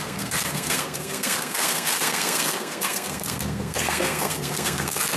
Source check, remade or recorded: remade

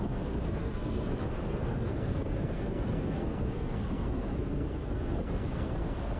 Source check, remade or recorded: remade